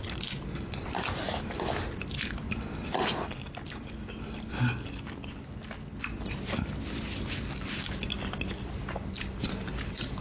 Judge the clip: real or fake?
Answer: real